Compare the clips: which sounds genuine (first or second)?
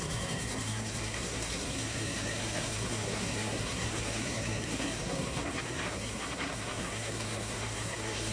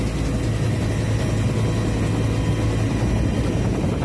second